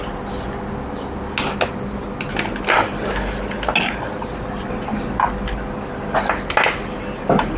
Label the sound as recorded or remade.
recorded